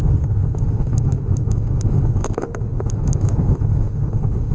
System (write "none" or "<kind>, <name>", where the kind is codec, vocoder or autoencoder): autoencoder, DAC-VAE